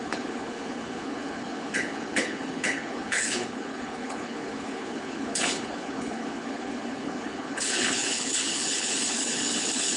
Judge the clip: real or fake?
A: fake